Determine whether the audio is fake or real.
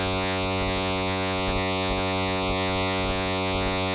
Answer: fake